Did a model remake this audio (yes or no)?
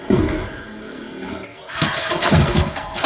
yes